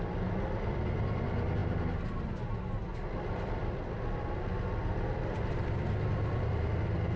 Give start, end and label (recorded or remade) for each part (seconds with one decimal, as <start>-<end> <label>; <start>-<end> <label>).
0.0-7.2 recorded